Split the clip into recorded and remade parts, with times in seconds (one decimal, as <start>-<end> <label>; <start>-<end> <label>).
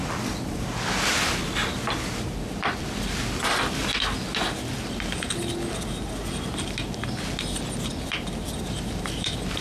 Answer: 0.0-3.8 remade; 3.8-7.9 recorded; 7.9-9.6 remade